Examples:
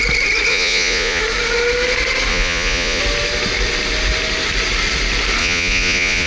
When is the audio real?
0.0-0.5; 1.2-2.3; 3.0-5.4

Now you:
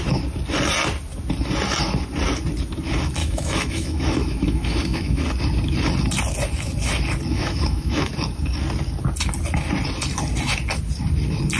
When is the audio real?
0.0-3.2; 5.2-7.3; 8.1-11.6

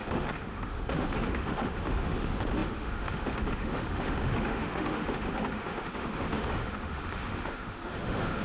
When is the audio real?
none

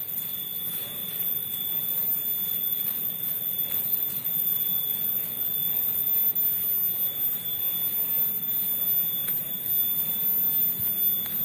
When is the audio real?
0.6-1.0; 1.9-2.5; 6.1-11.4

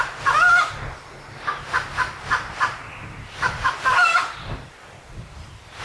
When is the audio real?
0.0-2.8

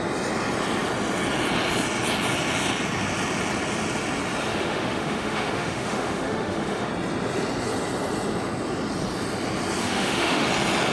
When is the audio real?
0.0-4.5; 6.9-9.8; 10.5-10.9

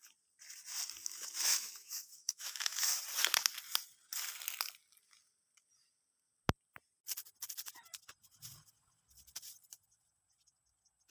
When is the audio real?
0.0-1.0; 3.0-11.1